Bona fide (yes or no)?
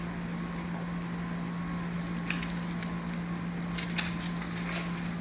yes